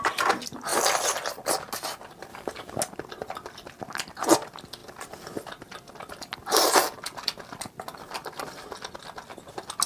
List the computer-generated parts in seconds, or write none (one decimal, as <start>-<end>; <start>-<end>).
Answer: 2.3-2.8